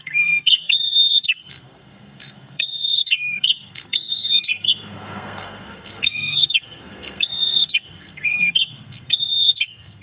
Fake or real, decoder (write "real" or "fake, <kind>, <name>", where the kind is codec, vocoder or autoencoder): fake, codec, SNAC